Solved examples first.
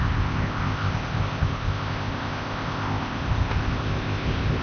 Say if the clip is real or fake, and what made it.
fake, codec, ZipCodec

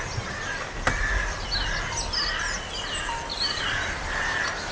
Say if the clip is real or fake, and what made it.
real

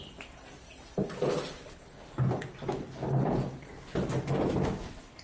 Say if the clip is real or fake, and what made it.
real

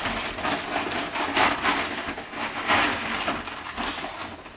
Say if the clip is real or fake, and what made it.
real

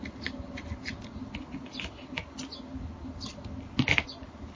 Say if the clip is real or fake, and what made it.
real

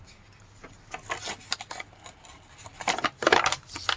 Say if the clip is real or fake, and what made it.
real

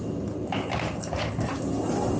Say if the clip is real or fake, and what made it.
real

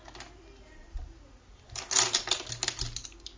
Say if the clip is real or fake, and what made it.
real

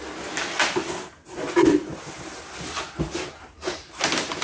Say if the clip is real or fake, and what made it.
real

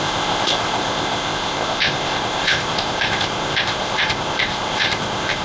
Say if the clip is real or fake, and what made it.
fake, codec, ZipCodec